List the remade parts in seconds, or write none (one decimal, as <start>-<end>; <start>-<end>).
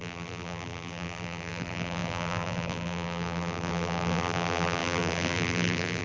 0.0-6.0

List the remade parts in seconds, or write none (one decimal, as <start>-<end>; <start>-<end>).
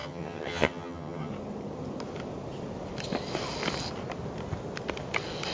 0.0-1.3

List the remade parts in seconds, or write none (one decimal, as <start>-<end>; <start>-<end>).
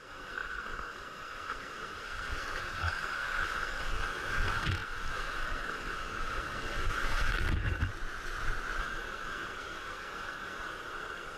0.0-7.9; 8.8-11.4